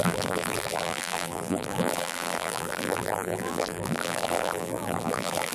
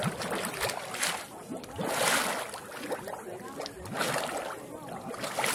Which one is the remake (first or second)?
first